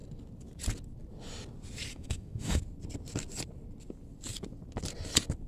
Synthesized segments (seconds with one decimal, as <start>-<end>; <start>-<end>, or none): 1.9-2.6

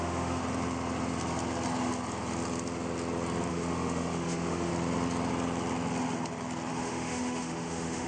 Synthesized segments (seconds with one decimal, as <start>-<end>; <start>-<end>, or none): 0.0-0.4; 3.5-4.7; 6.7-8.1

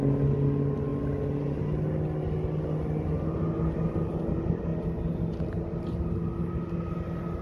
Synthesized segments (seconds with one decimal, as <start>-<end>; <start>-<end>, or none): none

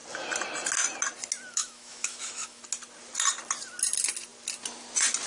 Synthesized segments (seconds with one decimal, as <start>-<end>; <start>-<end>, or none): 1.5-2.6

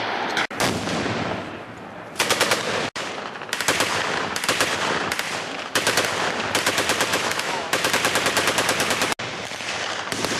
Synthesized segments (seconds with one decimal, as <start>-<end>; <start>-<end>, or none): 7.1-7.9

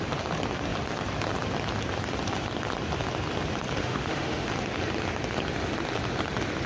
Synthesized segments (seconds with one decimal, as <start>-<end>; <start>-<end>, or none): 3.8-4.5

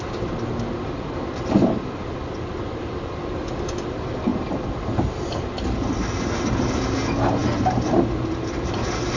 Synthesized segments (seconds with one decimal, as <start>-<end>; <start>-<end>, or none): none

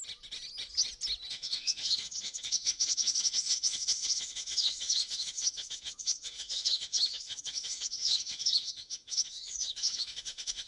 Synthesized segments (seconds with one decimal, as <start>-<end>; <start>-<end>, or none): 1.3-10.7